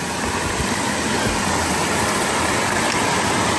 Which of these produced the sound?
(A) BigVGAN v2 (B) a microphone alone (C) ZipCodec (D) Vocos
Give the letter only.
B